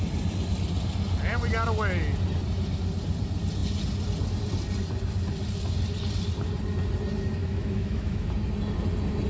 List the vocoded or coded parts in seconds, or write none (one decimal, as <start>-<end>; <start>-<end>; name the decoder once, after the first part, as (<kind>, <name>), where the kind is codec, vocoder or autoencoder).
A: 7.4-8.3 (autoencoder, DAC-VAE)

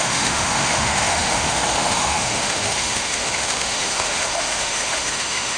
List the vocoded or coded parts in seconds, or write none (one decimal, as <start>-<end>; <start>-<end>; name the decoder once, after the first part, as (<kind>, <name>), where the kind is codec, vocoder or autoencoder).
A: 0.0-5.6 (autoencoder, DAC-VAE)

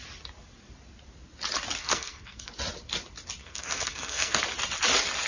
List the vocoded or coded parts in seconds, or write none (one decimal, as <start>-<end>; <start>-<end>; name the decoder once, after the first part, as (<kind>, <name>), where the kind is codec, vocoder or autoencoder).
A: 1.8-2.5 (codec, SNAC); 3.4-4.4

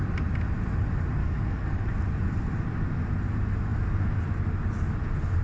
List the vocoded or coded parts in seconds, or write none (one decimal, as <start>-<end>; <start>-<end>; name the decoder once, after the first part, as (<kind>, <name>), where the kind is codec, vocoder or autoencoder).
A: 1.2-1.8 (codec, DAC)